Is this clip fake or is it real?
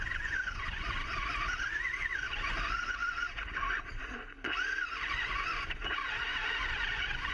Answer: fake